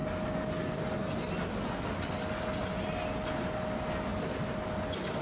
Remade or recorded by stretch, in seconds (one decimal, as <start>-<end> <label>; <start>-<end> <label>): 0.0-5.2 recorded